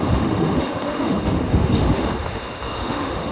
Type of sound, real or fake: fake